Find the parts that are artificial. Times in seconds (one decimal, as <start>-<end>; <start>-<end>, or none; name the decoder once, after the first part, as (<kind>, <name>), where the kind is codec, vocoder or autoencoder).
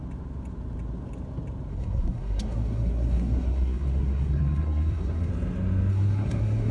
1.7-5.3 (codec, SNAC); 5.9-6.7